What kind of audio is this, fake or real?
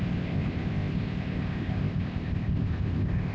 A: fake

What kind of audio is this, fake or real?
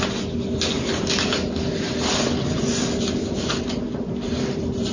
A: real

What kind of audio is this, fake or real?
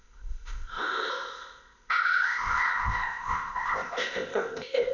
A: fake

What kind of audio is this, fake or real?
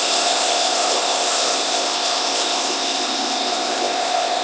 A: fake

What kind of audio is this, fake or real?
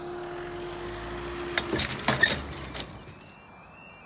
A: real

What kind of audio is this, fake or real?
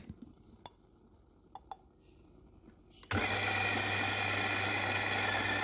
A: real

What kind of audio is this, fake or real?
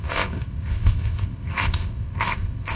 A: fake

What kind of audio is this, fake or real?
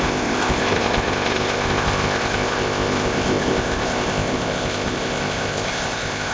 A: fake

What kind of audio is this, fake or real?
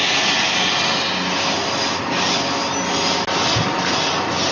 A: real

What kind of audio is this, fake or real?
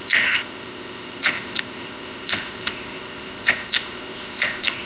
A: fake